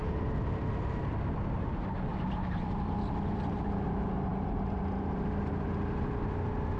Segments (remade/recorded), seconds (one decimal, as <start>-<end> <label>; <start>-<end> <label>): 0.0-6.8 recorded